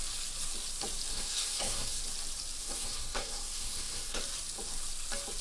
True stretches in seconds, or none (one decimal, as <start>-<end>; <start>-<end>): 0.0-1.1; 2.0-2.6; 4.2-5.4